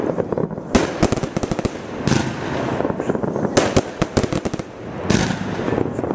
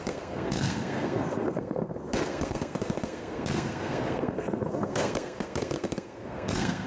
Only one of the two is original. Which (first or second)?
first